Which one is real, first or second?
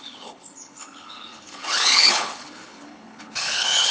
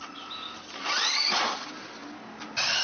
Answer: second